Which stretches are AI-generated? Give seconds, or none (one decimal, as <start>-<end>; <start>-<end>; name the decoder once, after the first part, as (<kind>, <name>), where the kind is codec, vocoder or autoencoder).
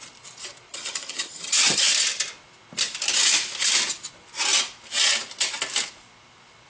0.7-1.9 (vocoder, HiFi-GAN)